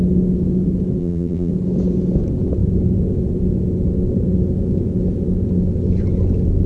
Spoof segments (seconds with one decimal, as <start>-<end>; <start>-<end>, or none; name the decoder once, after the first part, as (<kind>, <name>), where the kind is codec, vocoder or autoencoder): 1.0-1.5 (vocoder, BigVGAN v2)